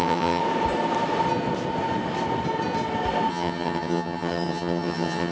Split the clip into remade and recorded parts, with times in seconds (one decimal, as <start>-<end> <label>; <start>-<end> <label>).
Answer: 0.0-0.4 remade; 0.4-3.3 recorded; 3.3-5.3 remade

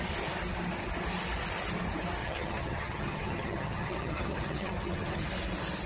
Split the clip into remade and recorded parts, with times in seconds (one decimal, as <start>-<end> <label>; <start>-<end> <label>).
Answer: 0.0-2.2 recorded; 2.2-5.3 remade; 5.3-5.9 recorded

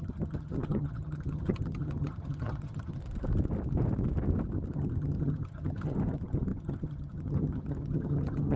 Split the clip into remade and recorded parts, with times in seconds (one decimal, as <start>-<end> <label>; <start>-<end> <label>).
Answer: 0.0-3.0 remade; 3.0-4.7 recorded; 4.7-8.6 remade

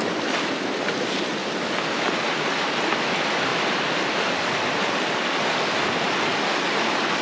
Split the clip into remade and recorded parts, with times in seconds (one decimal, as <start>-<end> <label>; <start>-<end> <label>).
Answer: 0.0-7.2 recorded

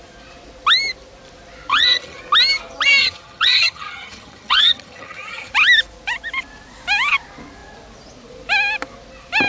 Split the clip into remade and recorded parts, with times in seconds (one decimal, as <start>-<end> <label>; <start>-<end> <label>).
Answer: 0.0-1.7 recorded; 1.7-2.2 remade; 2.2-3.0 recorded; 3.0-5.5 remade; 5.5-9.5 recorded

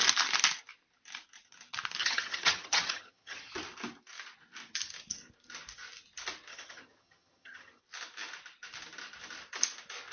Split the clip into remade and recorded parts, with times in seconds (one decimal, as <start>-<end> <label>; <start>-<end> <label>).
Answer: 0.0-2.0 recorded; 2.0-3.5 remade; 3.5-6.5 recorded; 6.5-7.8 remade; 7.8-10.1 recorded

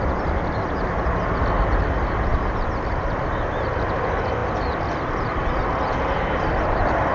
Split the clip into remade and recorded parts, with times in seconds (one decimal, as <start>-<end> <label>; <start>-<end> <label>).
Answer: 0.0-7.1 recorded

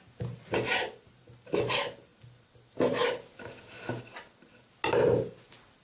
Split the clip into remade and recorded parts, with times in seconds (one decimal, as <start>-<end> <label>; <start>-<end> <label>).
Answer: 0.0-5.8 recorded